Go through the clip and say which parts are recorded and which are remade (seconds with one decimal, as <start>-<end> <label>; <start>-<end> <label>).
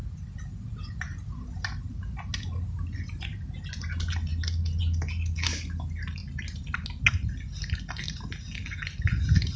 0.0-9.6 recorded